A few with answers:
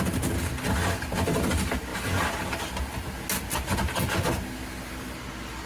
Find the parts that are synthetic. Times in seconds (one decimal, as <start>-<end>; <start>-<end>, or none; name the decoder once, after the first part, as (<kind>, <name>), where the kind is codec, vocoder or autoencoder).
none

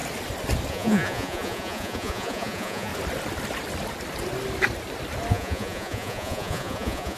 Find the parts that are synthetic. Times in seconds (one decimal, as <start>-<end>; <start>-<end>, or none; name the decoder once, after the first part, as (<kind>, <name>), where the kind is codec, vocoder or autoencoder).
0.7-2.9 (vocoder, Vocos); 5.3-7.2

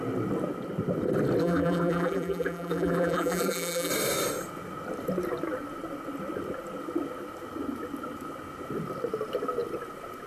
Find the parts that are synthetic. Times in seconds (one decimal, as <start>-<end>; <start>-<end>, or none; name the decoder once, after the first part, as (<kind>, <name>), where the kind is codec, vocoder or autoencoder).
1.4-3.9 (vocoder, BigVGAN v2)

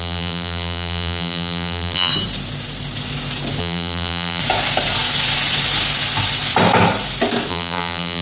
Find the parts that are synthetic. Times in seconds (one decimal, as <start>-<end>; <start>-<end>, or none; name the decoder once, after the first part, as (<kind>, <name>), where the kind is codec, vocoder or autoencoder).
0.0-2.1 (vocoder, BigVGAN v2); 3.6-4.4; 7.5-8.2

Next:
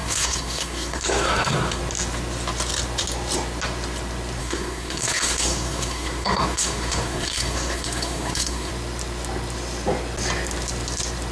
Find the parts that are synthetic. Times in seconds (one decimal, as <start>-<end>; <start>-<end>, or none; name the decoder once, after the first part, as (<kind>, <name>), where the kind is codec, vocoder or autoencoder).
0.0-1.8 (codec, SNAC); 4.4-8.7